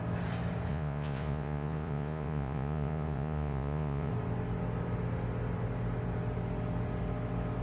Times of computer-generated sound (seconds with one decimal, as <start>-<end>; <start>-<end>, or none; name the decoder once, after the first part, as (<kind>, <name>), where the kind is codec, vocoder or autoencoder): 0.7-4.1 (vocoder, Vocos)